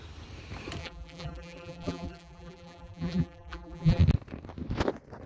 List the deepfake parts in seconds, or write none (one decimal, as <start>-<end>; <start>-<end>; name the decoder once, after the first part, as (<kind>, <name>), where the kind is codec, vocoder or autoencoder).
0.8-4.0 (vocoder, BigVGAN v2)